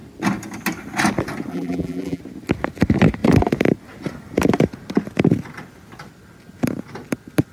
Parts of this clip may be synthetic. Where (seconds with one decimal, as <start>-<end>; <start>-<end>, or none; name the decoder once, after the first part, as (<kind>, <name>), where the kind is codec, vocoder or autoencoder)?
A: 1.5-2.2 (vocoder, BigVGAN v2)